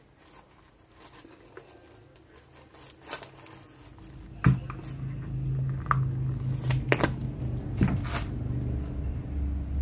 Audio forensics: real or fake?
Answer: real